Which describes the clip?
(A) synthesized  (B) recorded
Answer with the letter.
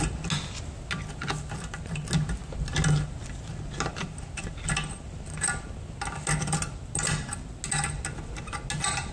B